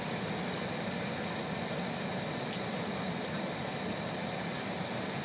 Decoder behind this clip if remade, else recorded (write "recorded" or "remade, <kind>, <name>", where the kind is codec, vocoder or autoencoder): recorded